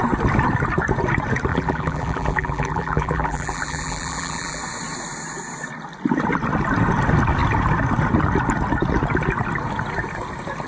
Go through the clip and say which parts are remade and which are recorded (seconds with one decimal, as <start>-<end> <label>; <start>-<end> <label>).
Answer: 0.0-1.5 recorded; 1.5-4.6 remade; 4.6-10.7 recorded